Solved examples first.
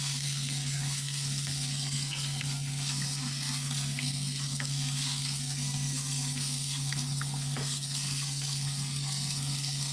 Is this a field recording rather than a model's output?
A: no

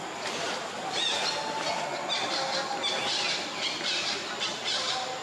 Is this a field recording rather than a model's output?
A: yes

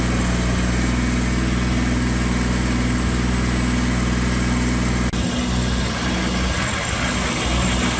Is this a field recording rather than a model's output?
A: yes